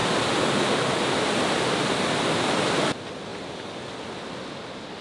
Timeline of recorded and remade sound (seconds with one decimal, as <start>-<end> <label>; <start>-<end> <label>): 0.0-2.5 remade; 2.5-3.3 recorded; 3.3-4.1 remade; 4.1-5.0 recorded